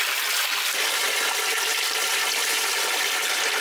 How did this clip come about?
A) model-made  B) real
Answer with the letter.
B